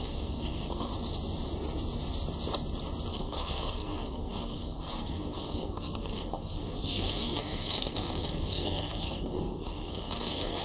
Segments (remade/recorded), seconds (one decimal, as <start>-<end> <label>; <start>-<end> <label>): 0.0-0.9 remade; 0.9-3.1 recorded; 3.1-10.6 remade